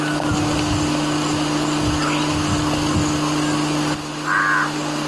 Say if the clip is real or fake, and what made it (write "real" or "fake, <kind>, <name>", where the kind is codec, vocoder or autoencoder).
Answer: real